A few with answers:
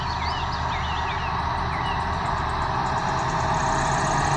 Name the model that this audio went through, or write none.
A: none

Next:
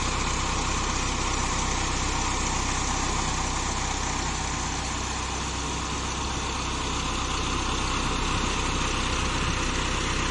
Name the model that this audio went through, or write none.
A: none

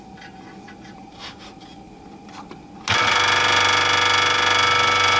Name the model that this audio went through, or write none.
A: none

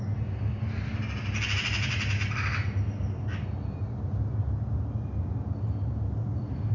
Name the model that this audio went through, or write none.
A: none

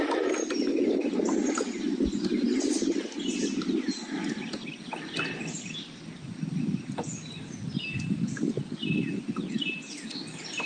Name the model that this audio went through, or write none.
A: none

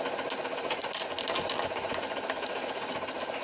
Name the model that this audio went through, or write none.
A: none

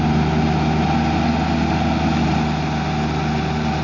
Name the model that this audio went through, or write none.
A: none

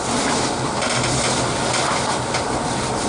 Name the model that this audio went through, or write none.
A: none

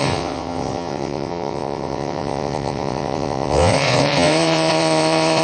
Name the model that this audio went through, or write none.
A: vocoder, WaveNeXt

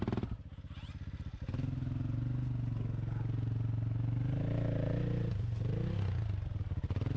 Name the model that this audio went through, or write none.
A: none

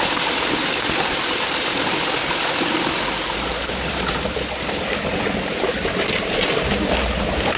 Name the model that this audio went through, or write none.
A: none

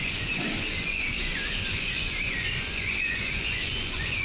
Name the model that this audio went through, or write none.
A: vocoder, Vocos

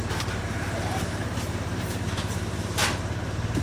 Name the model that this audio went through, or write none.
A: vocoder, BigVGAN v2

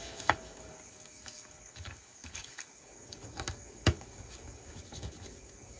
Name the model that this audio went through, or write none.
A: codec, DAC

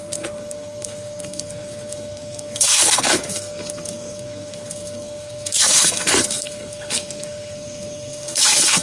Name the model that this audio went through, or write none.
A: codec, SNAC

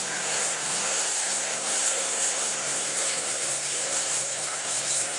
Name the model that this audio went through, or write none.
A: codec, SNAC